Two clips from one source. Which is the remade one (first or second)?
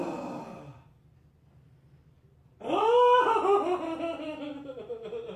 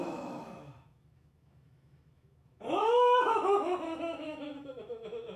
second